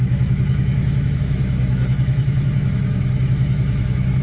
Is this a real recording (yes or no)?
no